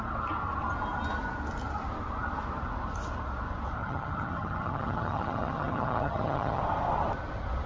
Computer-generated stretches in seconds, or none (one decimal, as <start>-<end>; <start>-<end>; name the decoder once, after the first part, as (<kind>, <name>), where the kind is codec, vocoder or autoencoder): 3.8-6.6 (vocoder, HiFi-GAN)